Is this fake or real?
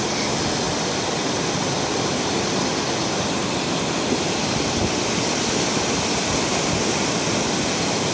real